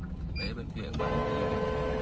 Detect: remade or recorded recorded